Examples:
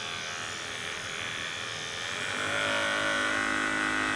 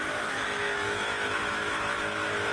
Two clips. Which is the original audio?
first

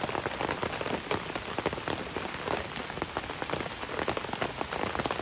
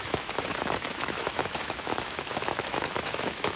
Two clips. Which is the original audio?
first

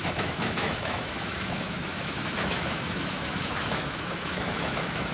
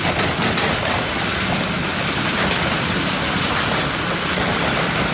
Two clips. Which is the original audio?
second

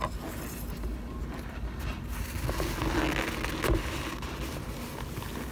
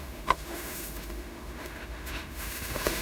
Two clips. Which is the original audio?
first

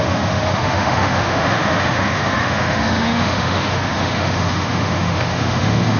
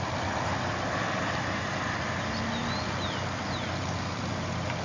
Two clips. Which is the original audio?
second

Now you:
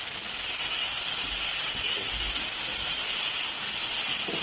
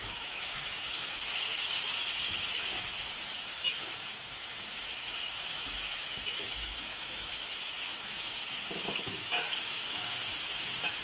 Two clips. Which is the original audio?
first